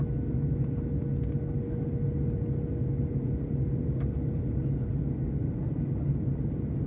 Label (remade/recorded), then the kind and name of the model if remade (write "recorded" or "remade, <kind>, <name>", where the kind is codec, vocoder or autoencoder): recorded